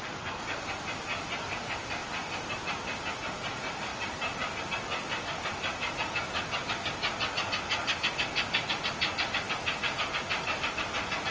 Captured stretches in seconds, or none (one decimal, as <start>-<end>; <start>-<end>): 0.0-11.3